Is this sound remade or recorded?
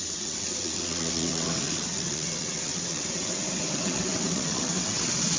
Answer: remade